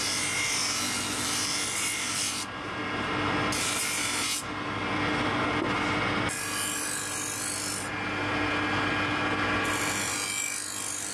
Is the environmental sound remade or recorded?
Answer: recorded